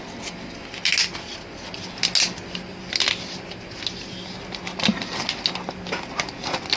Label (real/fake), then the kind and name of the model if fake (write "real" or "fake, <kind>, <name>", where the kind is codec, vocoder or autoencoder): real